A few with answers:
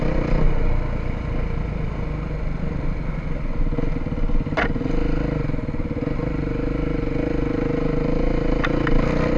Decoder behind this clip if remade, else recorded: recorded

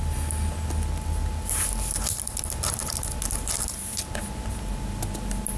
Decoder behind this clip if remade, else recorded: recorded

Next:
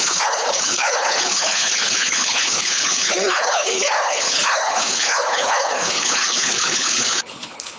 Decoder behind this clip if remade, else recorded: remade, codec, HILCodec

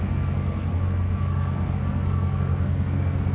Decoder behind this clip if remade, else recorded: remade, codec, SNAC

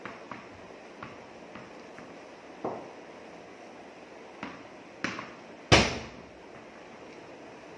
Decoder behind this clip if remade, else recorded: recorded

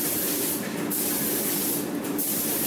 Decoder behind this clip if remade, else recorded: recorded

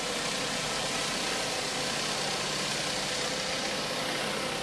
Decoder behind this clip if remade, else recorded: recorded